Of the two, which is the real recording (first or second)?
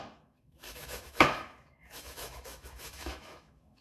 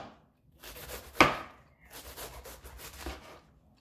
second